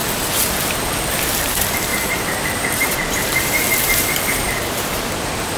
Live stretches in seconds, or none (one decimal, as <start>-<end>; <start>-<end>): 0.0-1.4